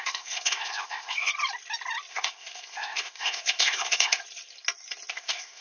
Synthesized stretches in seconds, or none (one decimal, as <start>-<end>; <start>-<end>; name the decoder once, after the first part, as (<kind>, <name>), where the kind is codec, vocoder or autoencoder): 0.0-1.3 (codec, ZipCodec); 2.1-4.2; 5.1-5.6